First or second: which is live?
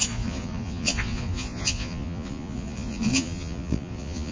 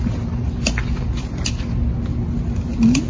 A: second